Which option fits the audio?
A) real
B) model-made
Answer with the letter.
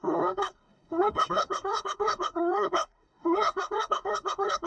B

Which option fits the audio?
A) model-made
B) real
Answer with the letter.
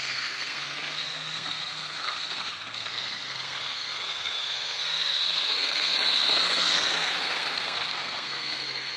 A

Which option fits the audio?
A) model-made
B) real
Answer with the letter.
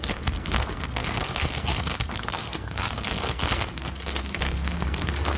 A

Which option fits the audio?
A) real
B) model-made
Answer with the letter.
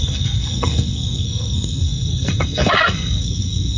B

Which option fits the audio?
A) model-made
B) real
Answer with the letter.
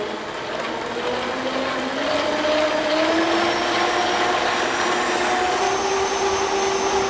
B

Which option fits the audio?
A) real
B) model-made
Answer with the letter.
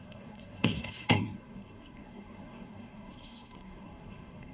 B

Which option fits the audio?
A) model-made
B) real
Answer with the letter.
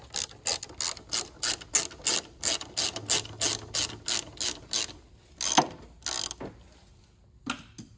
B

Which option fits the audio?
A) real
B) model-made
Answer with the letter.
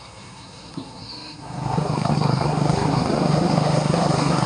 B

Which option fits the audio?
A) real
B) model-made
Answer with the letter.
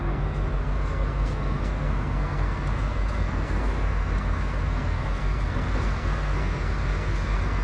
B